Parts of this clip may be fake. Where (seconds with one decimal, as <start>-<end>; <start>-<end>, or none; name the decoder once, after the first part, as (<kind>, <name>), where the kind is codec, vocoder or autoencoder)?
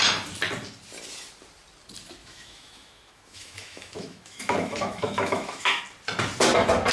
2.2-5.8 (autoencoder, DAC-VAE)